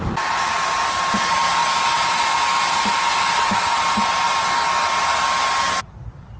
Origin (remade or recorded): recorded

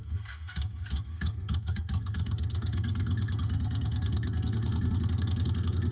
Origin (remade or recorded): remade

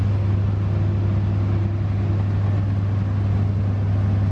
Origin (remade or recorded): recorded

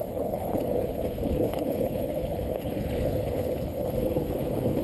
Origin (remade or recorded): remade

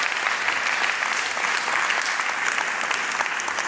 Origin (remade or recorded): recorded